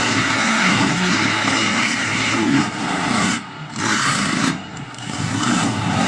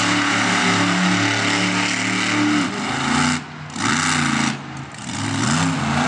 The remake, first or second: first